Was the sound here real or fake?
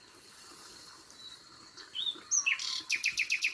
real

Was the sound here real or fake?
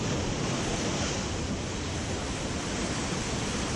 real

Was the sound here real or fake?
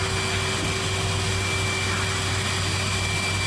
real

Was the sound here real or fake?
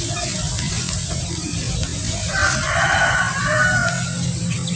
real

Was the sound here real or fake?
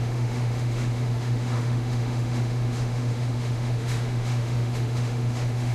fake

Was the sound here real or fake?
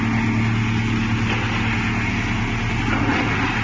real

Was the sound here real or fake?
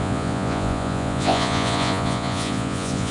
fake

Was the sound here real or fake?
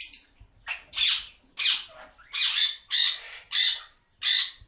real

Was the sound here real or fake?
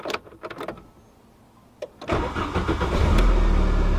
real